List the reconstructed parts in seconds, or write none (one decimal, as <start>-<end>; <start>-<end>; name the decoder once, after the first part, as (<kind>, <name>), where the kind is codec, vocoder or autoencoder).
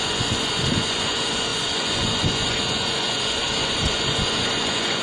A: 0.0-5.0 (vocoder, Vocos)